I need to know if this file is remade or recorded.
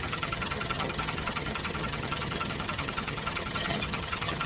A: remade